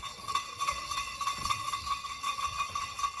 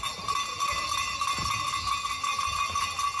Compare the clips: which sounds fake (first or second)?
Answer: first